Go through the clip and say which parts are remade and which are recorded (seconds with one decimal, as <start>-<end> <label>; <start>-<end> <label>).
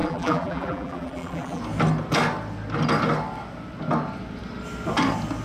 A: 0.0-1.6 remade; 1.6-5.4 recorded